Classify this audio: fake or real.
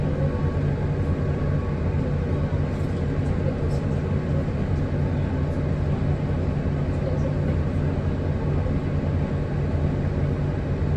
real